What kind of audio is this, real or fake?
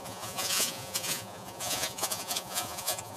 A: fake